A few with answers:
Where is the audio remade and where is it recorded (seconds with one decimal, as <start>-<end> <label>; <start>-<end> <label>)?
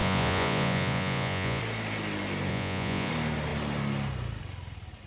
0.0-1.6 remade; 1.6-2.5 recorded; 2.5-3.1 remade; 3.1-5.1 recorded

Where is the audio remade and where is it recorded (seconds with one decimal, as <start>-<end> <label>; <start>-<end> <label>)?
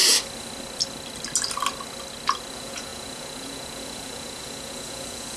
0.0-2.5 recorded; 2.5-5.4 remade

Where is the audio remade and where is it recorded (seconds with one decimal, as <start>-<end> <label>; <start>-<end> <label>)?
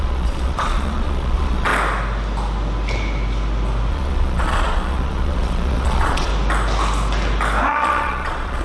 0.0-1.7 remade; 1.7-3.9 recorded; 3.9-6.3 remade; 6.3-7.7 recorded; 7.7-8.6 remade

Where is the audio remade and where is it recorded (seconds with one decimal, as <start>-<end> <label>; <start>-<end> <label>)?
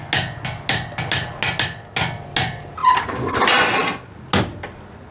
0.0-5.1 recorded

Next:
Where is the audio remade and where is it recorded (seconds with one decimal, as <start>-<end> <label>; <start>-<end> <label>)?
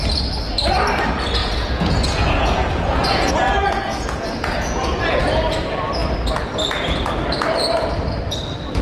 0.0-1.4 recorded; 1.4-5.2 remade; 5.2-8.8 recorded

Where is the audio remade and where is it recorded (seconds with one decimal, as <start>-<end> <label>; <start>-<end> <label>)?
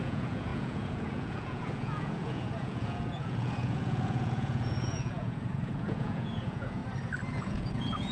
0.0-6.8 remade; 6.8-7.3 recorded; 7.3-8.1 remade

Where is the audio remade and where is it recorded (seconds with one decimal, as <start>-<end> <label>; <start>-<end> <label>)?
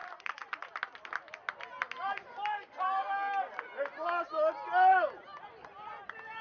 0.0-0.7 remade; 0.7-6.4 recorded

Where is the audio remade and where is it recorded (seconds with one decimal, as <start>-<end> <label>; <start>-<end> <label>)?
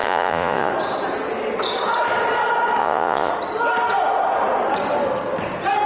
0.0-0.7 remade; 0.7-2.8 recorded; 2.8-3.3 remade; 3.3-5.9 recorded